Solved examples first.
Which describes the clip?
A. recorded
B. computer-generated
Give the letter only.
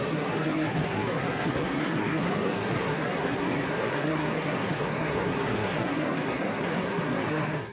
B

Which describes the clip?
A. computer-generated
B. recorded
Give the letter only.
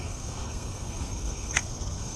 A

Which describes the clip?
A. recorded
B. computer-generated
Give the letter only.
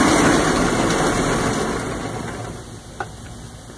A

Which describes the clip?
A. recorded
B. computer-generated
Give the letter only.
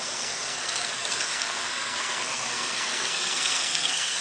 B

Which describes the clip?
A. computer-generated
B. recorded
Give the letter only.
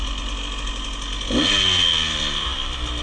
B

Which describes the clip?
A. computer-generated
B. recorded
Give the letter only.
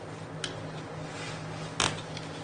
B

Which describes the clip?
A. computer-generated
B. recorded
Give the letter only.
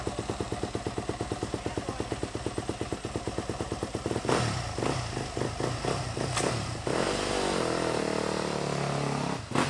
B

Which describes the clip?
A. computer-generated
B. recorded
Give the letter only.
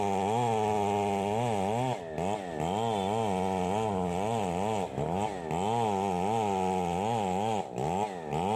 B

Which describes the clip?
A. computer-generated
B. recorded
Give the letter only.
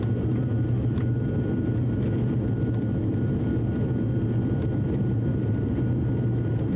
B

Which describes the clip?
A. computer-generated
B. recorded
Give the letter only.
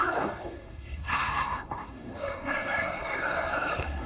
A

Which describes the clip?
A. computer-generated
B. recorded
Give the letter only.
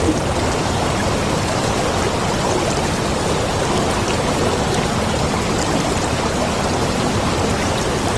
B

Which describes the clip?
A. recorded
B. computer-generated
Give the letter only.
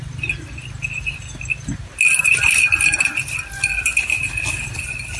A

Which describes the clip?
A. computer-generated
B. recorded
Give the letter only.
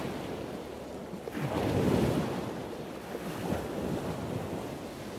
B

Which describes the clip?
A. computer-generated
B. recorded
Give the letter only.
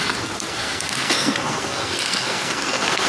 A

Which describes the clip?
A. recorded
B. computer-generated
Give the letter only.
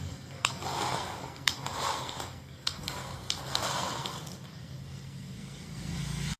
B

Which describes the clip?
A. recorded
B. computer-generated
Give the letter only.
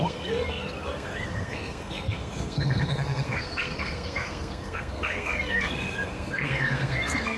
B